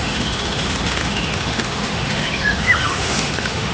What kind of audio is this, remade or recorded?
remade